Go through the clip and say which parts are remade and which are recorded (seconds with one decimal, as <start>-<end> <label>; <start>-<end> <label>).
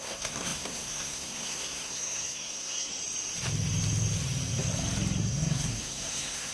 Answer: 0.0-2.9 remade; 2.9-5.2 recorded; 5.2-6.5 remade